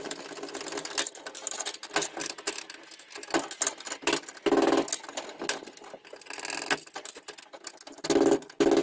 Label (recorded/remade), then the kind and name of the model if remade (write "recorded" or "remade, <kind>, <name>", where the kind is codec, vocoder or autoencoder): recorded